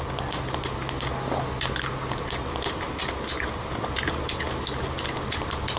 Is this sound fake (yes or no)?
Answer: no